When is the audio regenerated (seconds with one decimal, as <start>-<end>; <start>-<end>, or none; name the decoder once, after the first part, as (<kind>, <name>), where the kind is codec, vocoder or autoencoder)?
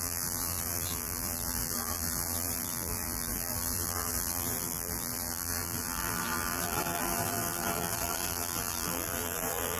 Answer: 0.0-9.8 (vocoder, BigVGAN v2)